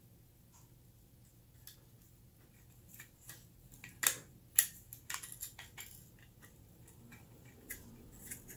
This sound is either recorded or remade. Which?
recorded